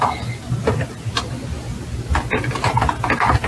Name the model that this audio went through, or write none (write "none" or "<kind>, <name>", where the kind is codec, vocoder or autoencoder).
none